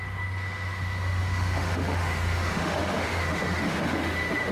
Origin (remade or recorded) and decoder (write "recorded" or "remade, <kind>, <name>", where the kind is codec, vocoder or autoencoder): remade, autoencoder, DAC-VAE